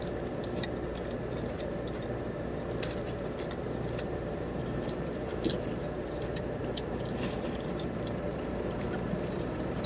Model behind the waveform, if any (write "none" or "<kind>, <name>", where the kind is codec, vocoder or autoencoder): vocoder, BigVGAN v2